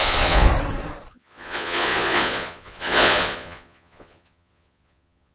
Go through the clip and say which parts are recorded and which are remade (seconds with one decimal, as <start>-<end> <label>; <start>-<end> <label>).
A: 0.0-0.5 remade; 0.5-1.1 recorded; 1.1-5.3 remade